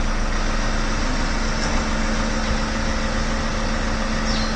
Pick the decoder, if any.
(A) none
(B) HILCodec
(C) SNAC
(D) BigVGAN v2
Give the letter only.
A